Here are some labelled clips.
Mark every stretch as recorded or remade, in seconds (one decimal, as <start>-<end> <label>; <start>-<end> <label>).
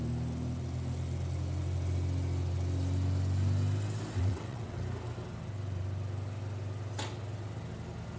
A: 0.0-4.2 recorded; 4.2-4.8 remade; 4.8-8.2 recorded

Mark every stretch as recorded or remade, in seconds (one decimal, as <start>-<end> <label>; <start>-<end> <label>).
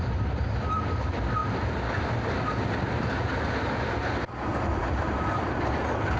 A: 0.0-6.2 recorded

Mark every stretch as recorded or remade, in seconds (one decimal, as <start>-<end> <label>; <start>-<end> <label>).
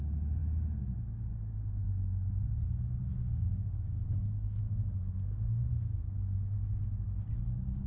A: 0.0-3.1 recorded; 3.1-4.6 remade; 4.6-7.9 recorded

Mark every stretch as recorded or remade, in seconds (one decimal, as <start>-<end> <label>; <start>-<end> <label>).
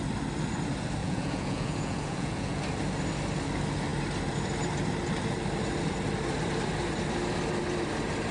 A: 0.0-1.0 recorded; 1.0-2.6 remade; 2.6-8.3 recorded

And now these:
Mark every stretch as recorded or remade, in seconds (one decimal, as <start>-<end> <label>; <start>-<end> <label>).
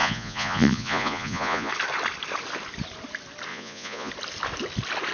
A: 0.0-1.7 remade; 1.7-3.5 recorded; 3.5-4.1 remade; 4.1-5.1 recorded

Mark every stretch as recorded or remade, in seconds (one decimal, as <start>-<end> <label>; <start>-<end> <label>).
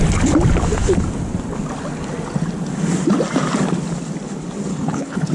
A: 0.0-4.7 recorded; 4.7-5.3 remade